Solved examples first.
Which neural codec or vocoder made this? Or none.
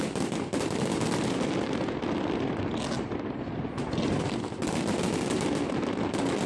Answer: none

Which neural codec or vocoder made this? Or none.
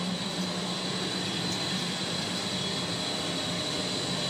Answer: none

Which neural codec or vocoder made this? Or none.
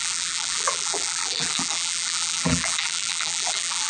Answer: vocoder, BigVGAN v2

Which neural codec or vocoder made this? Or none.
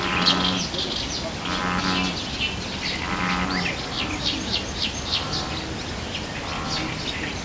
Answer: none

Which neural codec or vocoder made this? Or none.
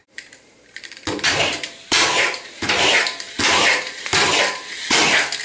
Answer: vocoder, BigVGAN v2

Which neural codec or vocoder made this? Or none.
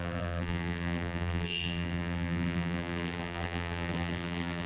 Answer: vocoder, BigVGAN v2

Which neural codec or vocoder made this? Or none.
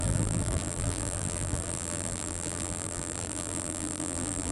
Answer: vocoder, BigVGAN v2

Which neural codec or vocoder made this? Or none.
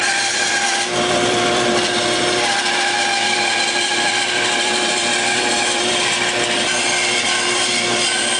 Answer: vocoder, BigVGAN v2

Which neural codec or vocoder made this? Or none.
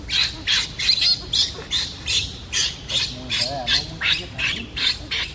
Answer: none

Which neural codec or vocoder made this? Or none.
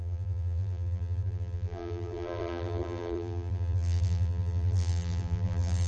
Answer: vocoder, BigVGAN v2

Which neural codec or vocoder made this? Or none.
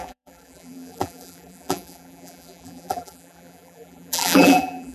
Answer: vocoder, BigVGAN v2